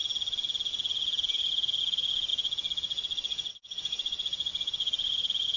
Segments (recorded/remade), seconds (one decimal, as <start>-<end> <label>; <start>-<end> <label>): 0.0-5.6 recorded